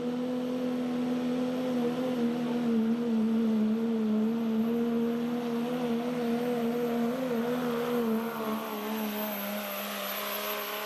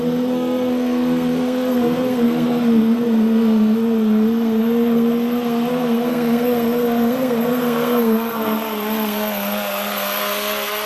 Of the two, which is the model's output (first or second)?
second